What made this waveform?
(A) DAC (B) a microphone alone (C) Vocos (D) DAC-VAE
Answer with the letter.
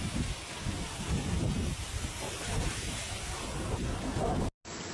B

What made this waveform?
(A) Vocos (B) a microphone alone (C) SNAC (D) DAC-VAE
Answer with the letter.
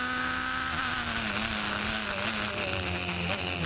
B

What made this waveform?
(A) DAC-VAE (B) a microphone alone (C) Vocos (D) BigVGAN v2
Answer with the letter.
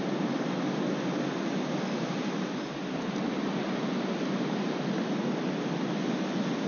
B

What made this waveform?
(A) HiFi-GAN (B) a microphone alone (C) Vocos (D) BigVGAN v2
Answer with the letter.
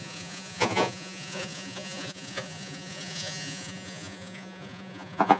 C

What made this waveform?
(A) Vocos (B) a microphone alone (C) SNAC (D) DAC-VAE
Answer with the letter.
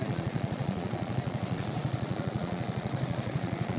A